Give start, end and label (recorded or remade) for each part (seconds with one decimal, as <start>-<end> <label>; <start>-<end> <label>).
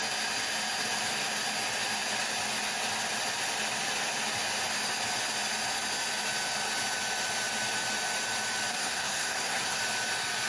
0.0-8.7 recorded; 8.7-9.8 remade; 9.8-10.5 recorded